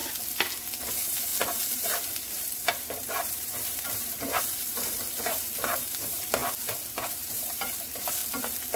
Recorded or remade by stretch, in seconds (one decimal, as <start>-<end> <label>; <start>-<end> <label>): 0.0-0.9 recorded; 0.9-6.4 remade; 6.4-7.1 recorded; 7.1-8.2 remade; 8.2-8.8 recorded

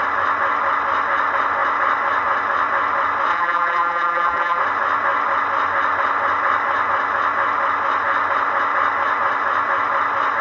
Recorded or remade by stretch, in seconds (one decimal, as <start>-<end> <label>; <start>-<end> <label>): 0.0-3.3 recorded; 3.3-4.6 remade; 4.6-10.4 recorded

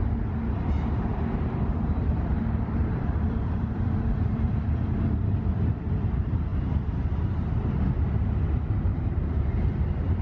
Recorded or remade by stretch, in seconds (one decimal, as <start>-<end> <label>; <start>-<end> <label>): 0.0-1.1 recorded; 1.1-4.5 remade; 4.5-8.9 recorded; 8.9-9.5 remade; 9.5-10.2 recorded